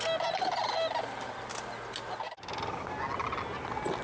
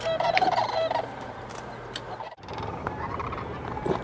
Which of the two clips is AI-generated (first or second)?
second